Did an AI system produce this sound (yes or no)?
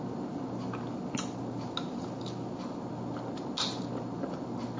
no